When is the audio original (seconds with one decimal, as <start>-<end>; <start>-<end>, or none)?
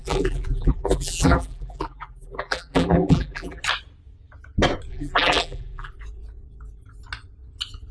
3.6-4.9; 5.9-7.9